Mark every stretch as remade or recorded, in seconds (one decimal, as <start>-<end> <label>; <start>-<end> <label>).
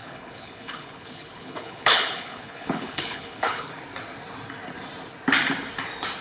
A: 0.0-3.7 remade; 3.7-6.2 recorded